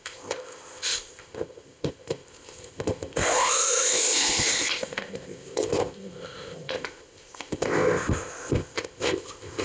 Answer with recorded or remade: remade